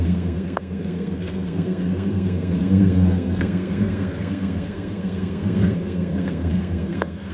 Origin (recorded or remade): remade